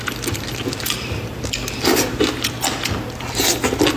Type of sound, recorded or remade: recorded